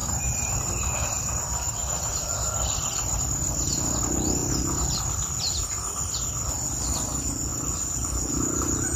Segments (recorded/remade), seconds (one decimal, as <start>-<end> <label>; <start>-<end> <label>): 0.0-3.2 remade; 3.2-7.5 recorded; 7.5-8.3 remade; 8.3-9.0 recorded